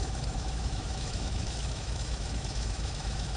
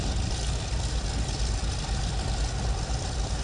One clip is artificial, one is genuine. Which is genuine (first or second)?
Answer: second